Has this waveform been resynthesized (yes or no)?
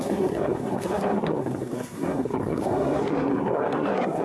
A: yes